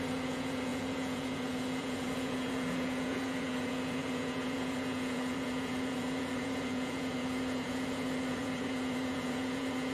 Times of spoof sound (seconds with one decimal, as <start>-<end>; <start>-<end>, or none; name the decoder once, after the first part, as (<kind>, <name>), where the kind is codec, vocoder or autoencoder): 0.0-9.9 (vocoder, Vocos)